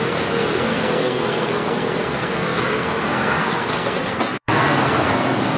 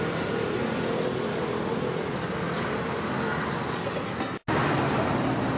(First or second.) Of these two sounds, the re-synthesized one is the first